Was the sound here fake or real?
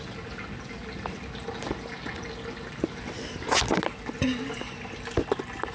real